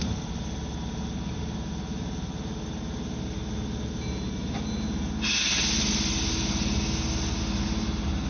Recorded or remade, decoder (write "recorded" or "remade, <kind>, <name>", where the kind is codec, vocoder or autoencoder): recorded